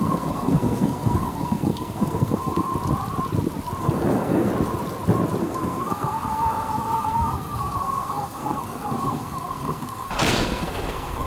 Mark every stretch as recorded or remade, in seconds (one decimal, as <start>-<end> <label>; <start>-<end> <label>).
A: 0.0-2.7 remade; 2.7-3.8 recorded; 3.8-4.5 remade; 4.5-5.4 recorded; 5.4-11.3 remade